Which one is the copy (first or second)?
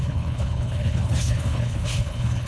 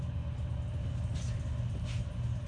first